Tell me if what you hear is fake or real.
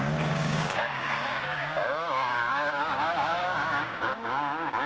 fake